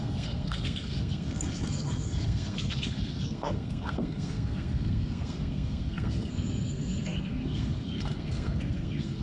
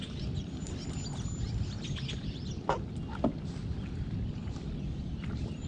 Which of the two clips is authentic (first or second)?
second